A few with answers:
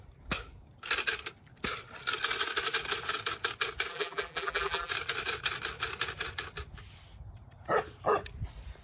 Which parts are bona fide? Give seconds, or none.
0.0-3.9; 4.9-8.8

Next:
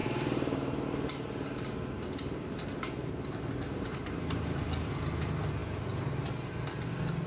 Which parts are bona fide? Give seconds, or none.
4.2-7.3

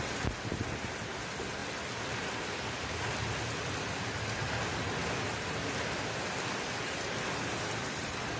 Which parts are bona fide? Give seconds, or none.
0.0-5.0

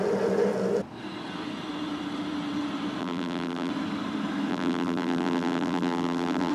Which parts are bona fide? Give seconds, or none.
0.0-3.0; 3.7-4.5

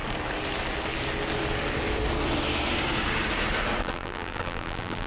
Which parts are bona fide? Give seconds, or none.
0.0-3.8

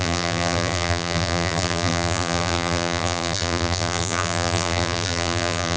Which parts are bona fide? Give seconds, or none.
none

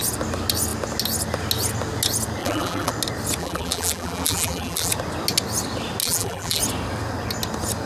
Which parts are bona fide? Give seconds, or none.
0.0-2.4; 2.9-3.4; 4.9-6.0; 6.6-7.9